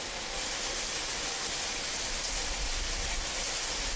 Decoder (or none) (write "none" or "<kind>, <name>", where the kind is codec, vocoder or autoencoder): none